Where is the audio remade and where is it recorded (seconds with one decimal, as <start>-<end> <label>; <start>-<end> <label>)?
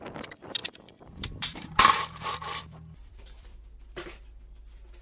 0.0-0.6 recorded; 0.6-3.6 remade; 3.6-5.0 recorded